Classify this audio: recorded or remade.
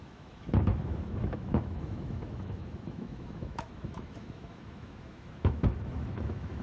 remade